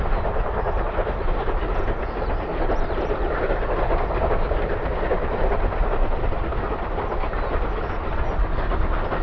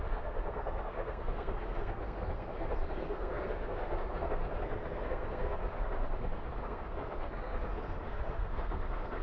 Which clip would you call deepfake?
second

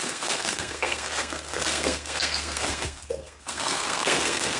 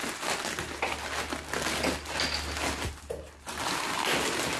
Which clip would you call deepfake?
first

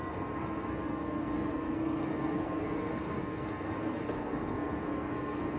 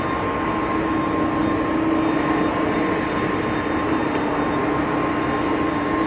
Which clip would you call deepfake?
first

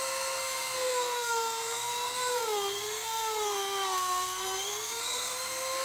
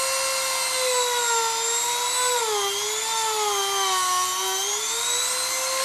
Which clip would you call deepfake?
first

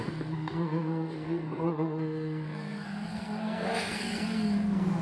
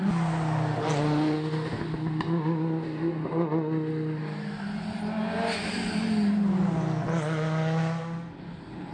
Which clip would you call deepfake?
first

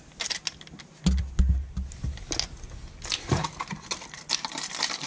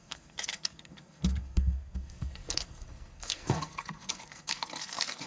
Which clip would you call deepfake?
second